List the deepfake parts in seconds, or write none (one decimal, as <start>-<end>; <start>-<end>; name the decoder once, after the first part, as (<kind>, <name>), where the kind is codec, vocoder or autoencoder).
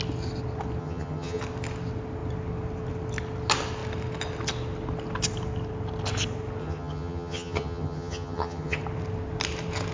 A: 0.8-1.4 (vocoder, HiFi-GAN); 6.6-8.8